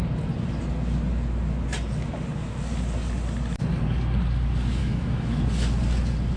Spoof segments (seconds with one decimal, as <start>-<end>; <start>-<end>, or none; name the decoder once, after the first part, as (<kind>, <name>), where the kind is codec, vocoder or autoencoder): 4.8-5.4 (autoencoder, DAC-VAE)